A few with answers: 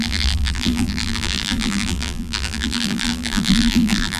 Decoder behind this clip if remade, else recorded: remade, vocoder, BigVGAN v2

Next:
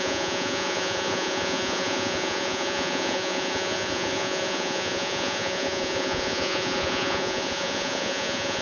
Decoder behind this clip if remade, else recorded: remade, vocoder, Vocos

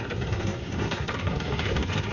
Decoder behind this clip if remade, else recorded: remade, codec, SNAC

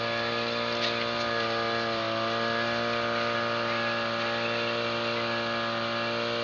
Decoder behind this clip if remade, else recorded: recorded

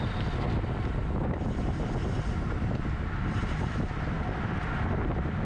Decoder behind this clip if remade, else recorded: recorded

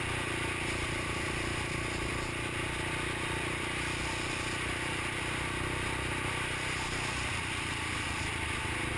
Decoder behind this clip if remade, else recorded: recorded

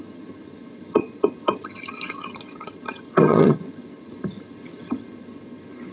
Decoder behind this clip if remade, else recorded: remade, vocoder, HiFi-GAN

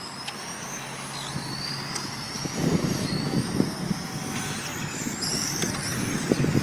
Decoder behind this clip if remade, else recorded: recorded